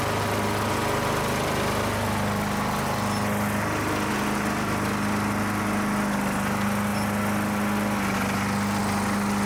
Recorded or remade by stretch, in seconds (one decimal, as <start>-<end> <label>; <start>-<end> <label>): 0.0-9.5 recorded